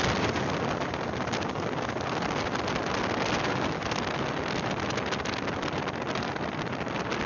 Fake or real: real